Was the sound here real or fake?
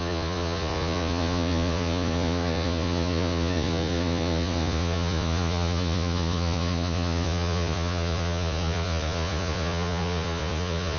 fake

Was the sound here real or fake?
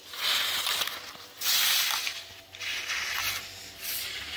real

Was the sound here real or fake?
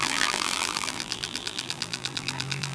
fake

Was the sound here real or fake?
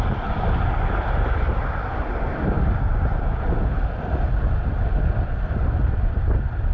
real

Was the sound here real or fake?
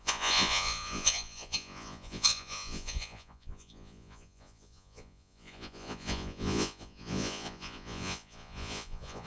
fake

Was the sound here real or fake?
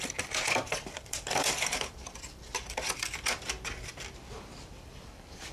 fake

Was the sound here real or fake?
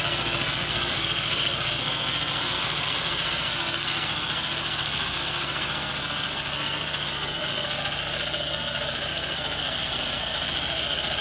fake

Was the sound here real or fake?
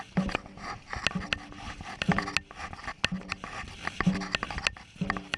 real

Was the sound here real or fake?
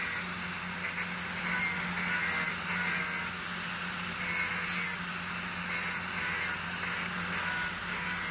real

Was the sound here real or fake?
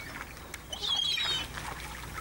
real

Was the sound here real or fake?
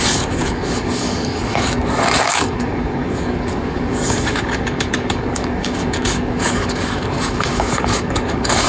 fake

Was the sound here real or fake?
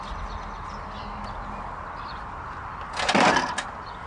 real